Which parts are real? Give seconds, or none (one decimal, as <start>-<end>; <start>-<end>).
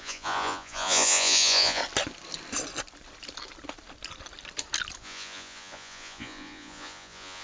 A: 1.8-5.0